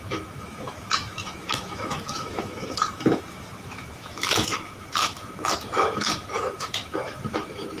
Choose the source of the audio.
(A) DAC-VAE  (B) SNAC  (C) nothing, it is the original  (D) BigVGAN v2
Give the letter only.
A